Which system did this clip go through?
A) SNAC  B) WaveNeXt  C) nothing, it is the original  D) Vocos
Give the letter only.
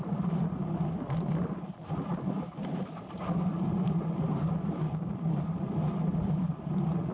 C